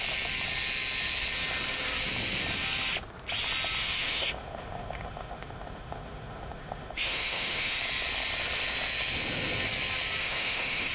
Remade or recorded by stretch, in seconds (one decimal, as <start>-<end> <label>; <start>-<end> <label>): 0.0-3.8 recorded; 3.8-7.8 remade; 7.8-10.2 recorded; 10.2-10.9 remade

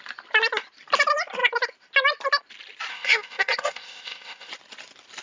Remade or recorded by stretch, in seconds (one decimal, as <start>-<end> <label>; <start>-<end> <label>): 0.0-2.9 recorded; 2.9-4.5 remade; 4.5-5.2 recorded

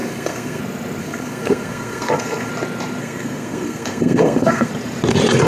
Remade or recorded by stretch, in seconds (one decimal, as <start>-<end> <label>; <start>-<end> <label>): 0.0-0.6 remade; 0.6-1.0 recorded; 1.0-2.5 remade; 2.5-3.0 recorded; 3.0-4.7 remade; 4.7-5.5 recorded

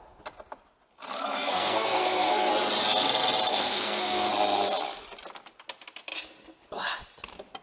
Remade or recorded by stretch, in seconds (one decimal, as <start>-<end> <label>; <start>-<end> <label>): 0.0-1.1 recorded; 1.1-2.5 remade; 2.5-3.5 recorded; 3.5-4.3 remade; 4.3-7.6 recorded